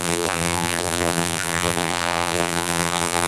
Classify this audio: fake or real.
fake